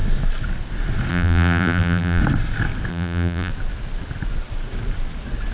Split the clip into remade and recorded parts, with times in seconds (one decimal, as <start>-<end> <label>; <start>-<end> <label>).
0.0-1.1 recorded; 1.1-2.2 remade; 2.2-2.9 recorded; 2.9-3.5 remade; 3.5-5.5 recorded